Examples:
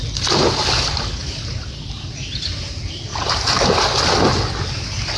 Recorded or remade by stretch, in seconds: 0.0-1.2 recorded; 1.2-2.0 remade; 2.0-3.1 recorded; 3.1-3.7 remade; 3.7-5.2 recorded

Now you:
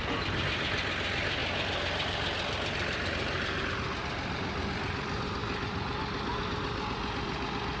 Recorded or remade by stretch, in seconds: 0.0-1.4 recorded; 1.4-3.6 remade; 3.6-7.8 recorded

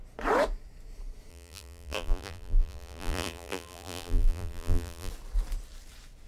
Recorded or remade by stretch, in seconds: 0.0-1.3 recorded; 1.3-5.1 remade; 5.1-6.3 recorded

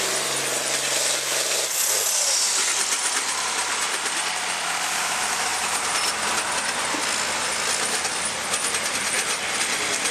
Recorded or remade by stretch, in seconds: 0.0-10.1 recorded